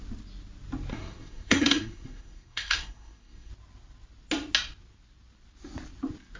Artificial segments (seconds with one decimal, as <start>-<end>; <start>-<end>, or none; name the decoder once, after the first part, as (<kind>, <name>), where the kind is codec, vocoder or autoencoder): 0.9-3.5 (codec, SNAC)